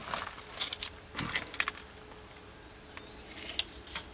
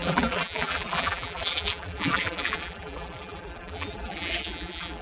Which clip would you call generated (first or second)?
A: second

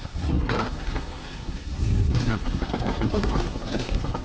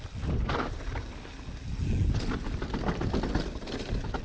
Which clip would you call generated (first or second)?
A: first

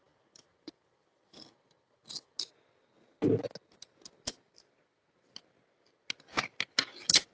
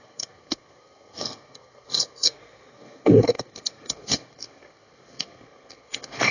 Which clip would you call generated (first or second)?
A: second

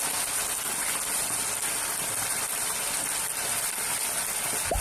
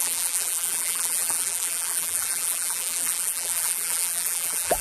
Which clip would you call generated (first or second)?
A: second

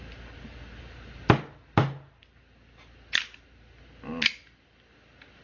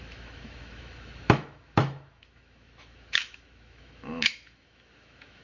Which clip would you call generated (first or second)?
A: second